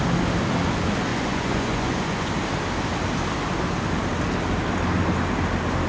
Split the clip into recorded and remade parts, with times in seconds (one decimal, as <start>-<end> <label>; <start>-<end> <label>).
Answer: 0.0-1.1 recorded; 1.1-2.3 remade; 2.3-5.9 recorded

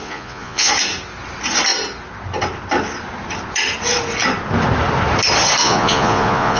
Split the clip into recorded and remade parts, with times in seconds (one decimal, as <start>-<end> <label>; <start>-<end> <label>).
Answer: 0.0-0.7 remade; 0.7-5.6 recorded; 5.6-6.6 remade